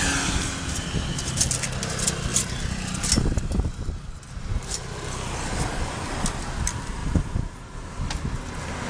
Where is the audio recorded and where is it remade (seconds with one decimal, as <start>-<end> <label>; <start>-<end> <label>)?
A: 0.0-8.9 recorded